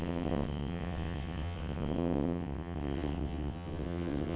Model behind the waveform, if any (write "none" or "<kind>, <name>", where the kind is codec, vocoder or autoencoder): vocoder, WaveNeXt